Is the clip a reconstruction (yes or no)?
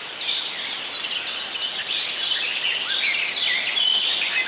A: no